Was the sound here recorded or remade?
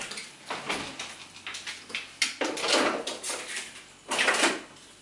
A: recorded